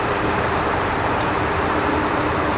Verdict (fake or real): fake